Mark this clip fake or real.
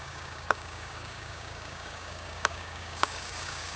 fake